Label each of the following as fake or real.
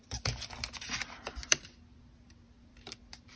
fake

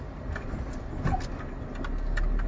real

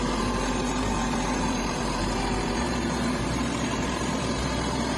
fake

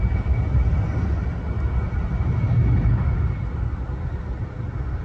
real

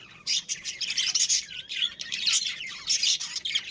fake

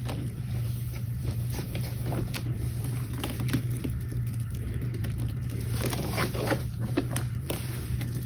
fake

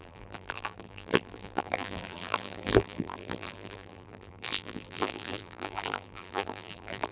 fake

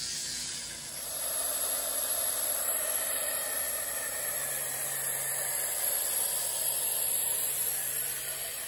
real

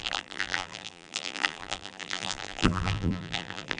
fake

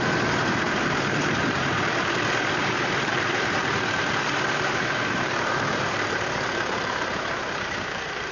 fake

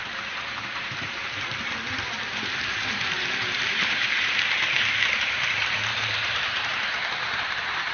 fake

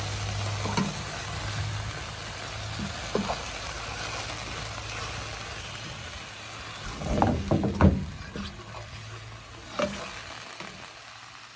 real